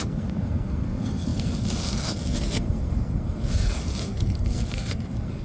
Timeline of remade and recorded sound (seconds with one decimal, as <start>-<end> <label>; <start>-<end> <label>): 0.0-5.4 remade